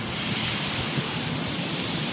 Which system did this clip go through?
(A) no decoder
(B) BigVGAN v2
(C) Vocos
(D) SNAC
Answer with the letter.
B